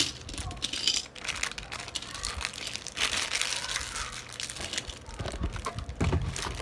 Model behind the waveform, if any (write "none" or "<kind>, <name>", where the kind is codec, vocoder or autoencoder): none